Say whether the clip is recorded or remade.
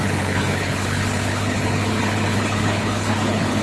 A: remade